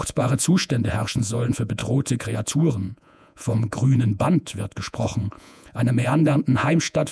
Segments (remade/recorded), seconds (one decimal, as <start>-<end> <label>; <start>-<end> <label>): 0.0-7.1 remade